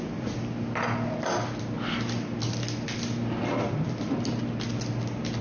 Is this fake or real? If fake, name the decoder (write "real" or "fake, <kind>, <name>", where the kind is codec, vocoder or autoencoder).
real